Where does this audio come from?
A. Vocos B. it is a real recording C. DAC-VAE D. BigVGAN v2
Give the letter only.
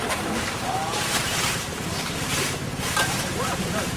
D